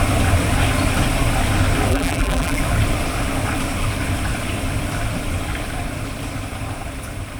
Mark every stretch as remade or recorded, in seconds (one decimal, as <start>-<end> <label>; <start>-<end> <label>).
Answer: 0.0-1.9 recorded; 1.9-2.6 remade; 2.6-7.4 recorded

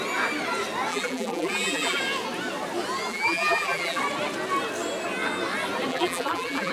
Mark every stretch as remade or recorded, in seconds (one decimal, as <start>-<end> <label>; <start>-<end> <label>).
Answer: 0.0-0.9 recorded; 0.9-2.0 remade; 2.0-3.1 recorded; 3.1-4.0 remade; 4.0-5.9 recorded; 5.9-6.7 remade